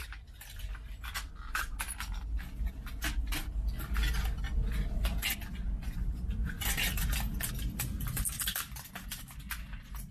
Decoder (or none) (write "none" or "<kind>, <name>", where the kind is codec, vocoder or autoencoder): none